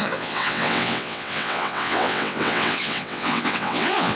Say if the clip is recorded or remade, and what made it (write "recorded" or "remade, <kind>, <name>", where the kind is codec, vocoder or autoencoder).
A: remade, vocoder, WaveNeXt